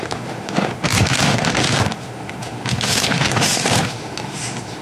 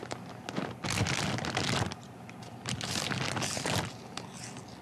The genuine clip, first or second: second